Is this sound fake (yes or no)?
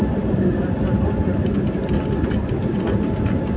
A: no